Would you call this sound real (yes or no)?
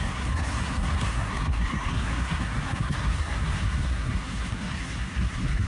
no